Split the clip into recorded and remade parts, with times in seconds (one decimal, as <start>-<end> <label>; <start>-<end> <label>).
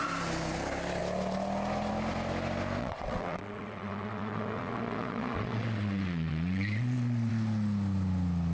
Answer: 0.0-2.8 recorded; 2.8-7.3 remade; 7.3-8.5 recorded